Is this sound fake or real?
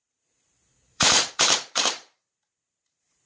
fake